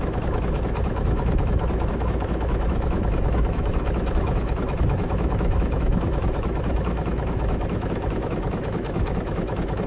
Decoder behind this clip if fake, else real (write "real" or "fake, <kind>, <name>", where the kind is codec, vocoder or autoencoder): fake, autoencoder, DAC-VAE